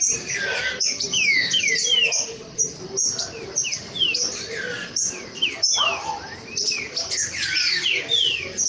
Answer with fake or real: real